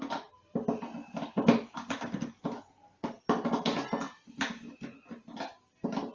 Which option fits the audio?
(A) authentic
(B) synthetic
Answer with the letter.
A